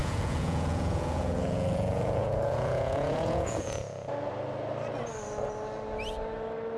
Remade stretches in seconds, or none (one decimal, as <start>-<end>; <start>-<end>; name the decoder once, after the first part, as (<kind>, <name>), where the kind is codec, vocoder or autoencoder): 0.0-4.1 (vocoder, Vocos)